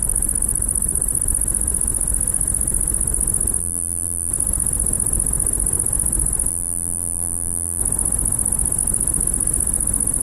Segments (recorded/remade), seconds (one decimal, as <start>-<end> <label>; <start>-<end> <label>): 0.0-3.6 recorded; 3.6-4.3 remade; 4.3-6.5 recorded; 6.5-7.8 remade; 7.8-10.2 recorded